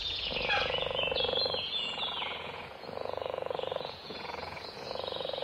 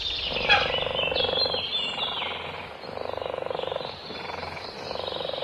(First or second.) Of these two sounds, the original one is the second